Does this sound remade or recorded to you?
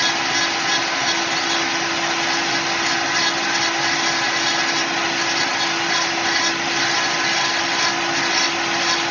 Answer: recorded